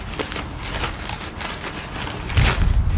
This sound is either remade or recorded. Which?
recorded